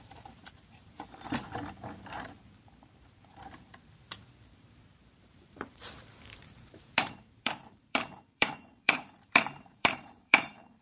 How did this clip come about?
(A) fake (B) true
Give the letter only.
A